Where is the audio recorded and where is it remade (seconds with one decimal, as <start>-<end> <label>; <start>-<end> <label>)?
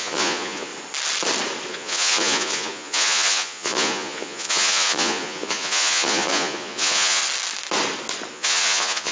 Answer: 0.0-0.7 remade; 0.7-1.7 recorded; 1.7-7.2 remade; 7.2-8.3 recorded; 8.3-9.1 remade